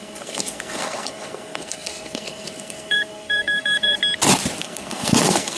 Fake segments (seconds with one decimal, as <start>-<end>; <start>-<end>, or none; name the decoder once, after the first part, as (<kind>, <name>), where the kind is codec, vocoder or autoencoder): 0.0-4.0 (codec, SNAC); 4.6-5.6